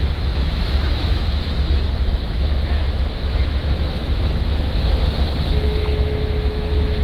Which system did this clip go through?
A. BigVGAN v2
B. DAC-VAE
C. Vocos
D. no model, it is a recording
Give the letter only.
B